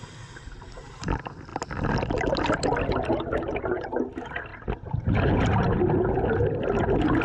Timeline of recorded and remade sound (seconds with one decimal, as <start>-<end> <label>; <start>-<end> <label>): 0.0-7.2 recorded